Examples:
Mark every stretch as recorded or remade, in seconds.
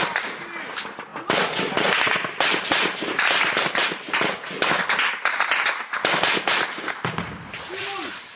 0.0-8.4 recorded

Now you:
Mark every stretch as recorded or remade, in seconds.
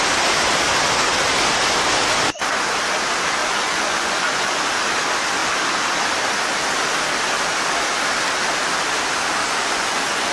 0.0-3.4 recorded; 3.4-4.7 remade; 4.7-9.4 recorded; 9.4-10.3 remade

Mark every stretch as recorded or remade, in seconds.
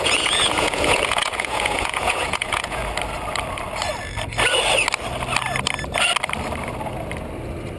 0.0-2.8 remade; 2.8-7.8 recorded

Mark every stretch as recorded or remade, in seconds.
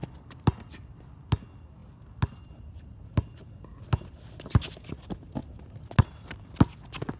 0.0-7.2 recorded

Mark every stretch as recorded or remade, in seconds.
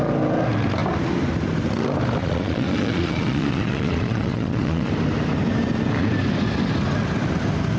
0.0-2.2 recorded; 2.2-4.9 remade; 4.9-7.8 recorded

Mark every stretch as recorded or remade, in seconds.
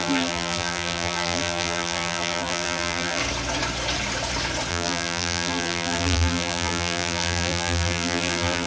0.0-3.2 remade; 3.2-4.7 recorded; 4.7-8.7 remade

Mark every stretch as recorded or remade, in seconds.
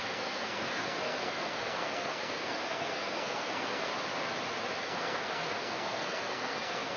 0.0-3.9 remade; 3.9-4.8 recorded; 4.8-7.0 remade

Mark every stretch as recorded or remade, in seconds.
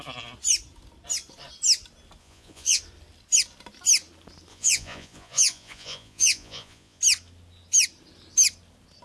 0.0-2.2 recorded; 2.2-2.8 remade; 2.8-4.5 recorded; 4.5-7.0 remade; 7.0-9.0 recorded